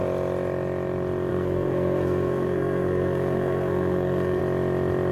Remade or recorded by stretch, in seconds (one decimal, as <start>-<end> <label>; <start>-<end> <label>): 0.0-1.3 recorded; 1.3-4.4 remade; 4.4-5.1 recorded